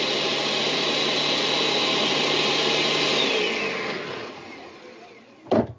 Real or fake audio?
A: real